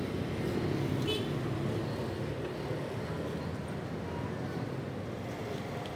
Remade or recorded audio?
recorded